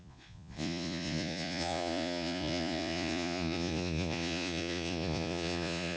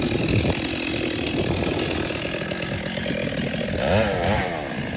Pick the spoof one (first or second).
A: first